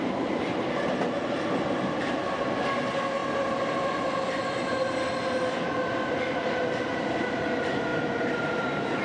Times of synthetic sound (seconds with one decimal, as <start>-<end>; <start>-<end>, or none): none